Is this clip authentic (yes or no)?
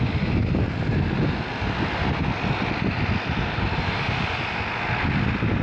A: yes